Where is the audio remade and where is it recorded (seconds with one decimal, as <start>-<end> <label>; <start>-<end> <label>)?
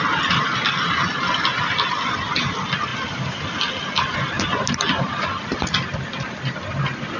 0.0-7.2 recorded